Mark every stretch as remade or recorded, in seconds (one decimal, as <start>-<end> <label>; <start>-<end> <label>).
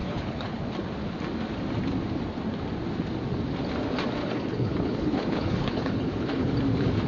0.0-0.6 remade; 0.6-4.2 recorded; 4.2-6.5 remade; 6.5-7.1 recorded